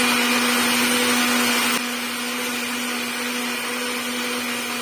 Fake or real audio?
real